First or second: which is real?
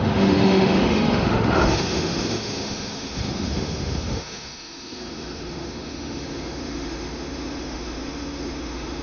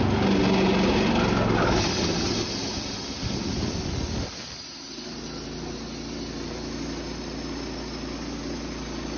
second